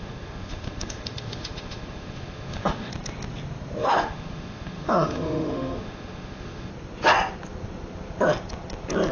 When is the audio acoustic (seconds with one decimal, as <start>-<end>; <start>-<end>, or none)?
2.9-3.8; 6.7-9.1